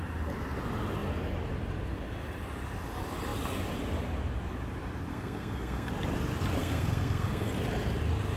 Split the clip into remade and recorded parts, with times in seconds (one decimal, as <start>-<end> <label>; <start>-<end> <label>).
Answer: 0.0-5.1 recorded; 5.1-5.9 remade; 5.9-6.6 recorded; 6.6-7.5 remade; 7.5-8.4 recorded